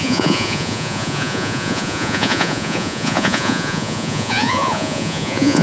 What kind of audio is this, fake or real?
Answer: fake